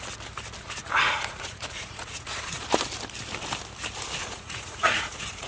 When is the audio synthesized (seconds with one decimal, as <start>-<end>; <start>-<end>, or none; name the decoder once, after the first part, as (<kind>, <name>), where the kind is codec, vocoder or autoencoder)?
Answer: 0.8-2.8 (vocoder, Vocos); 4.2-5.5